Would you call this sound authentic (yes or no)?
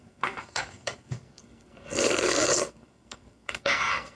no